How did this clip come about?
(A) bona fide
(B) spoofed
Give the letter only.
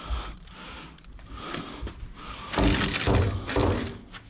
A